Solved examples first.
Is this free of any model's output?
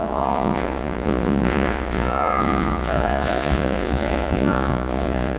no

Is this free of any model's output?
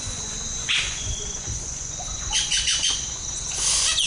no